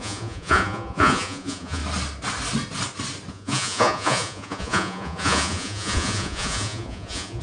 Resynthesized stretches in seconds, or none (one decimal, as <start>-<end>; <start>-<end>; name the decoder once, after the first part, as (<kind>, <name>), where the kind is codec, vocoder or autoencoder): 0.0-1.8 (vocoder, Vocos); 3.3-7.4